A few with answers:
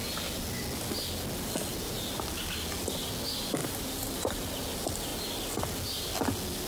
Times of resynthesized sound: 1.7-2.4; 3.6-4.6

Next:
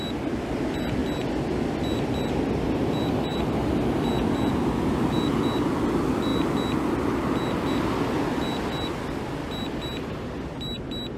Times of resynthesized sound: none

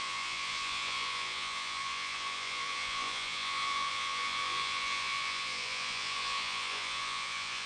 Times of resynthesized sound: 0.0-7.7

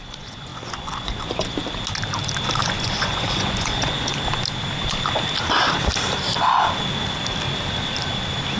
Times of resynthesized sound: 0.0-1.6; 2.6-4.1